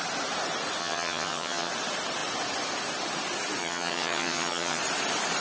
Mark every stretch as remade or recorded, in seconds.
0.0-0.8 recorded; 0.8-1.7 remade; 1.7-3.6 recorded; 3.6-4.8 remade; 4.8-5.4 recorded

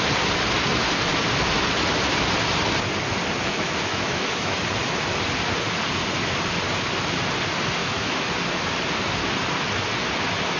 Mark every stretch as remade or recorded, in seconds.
0.0-3.5 recorded; 3.5-4.6 remade; 4.6-7.8 recorded; 7.8-8.3 remade; 8.3-10.6 recorded

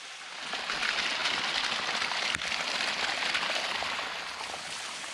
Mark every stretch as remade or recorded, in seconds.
0.0-5.1 recorded

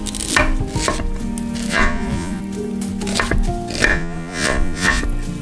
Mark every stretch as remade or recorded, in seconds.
0.0-1.7 recorded; 1.7-2.4 remade; 2.4-3.9 recorded; 3.9-5.0 remade; 5.0-5.4 recorded

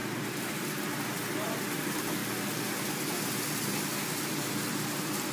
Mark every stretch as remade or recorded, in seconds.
0.0-5.3 recorded

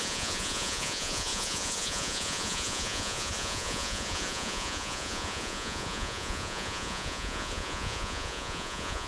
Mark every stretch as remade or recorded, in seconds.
0.0-9.1 remade